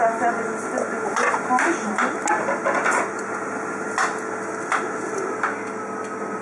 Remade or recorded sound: recorded